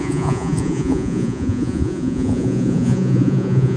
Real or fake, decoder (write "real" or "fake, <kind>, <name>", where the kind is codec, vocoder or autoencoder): fake, vocoder, Vocos